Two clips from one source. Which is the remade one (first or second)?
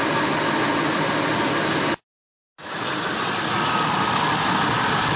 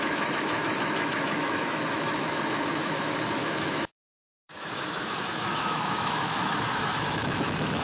second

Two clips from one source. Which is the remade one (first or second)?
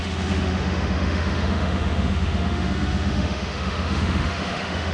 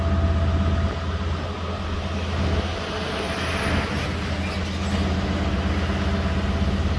first